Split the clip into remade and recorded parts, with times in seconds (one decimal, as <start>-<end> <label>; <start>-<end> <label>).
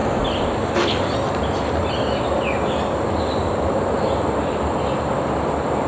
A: 0.0-5.9 recorded